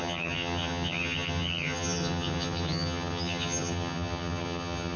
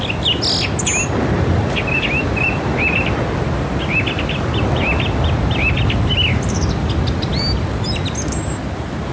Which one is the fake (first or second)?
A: first